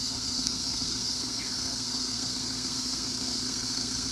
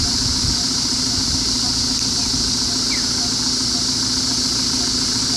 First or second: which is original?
second